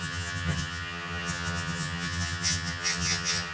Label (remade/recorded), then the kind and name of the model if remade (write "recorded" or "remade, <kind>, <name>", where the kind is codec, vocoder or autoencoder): remade, vocoder, HiFi-GAN